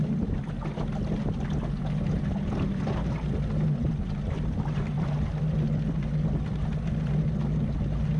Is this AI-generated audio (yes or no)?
no